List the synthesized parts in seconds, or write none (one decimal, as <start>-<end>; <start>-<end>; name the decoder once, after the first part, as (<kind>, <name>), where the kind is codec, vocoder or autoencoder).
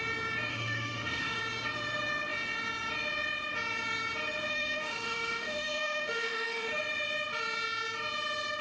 0.5-1.4 (autoencoder, DAC-VAE); 4.5-6.8